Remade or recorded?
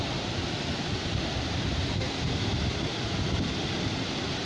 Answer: remade